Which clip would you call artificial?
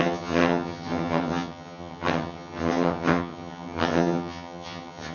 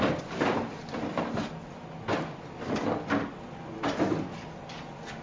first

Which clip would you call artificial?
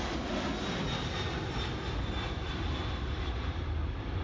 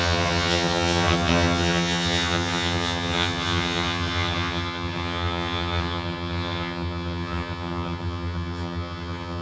second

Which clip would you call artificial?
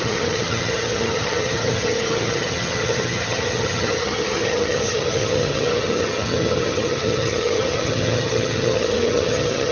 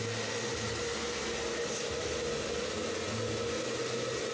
first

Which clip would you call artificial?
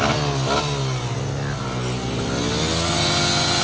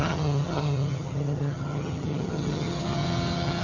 second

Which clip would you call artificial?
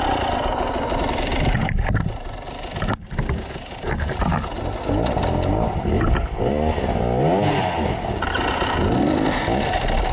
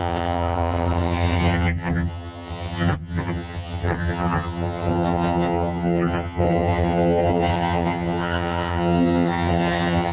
second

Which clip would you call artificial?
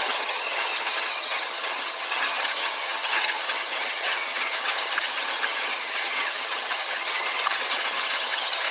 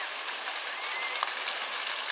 first